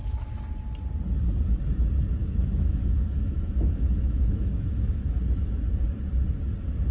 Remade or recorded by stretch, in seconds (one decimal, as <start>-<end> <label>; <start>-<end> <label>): 0.0-2.2 recorded; 2.2-5.2 remade; 5.2-6.9 recorded